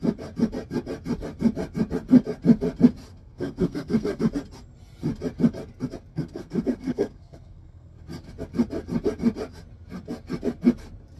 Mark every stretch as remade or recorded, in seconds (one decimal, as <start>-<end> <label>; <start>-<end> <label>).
0.0-3.1 recorded; 3.1-4.2 remade; 4.2-6.1 recorded; 6.1-8.0 remade; 8.0-11.2 recorded